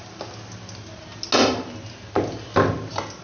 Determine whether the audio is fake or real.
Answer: real